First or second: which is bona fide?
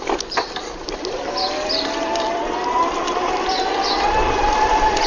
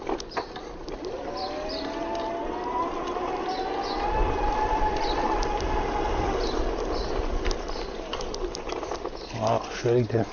second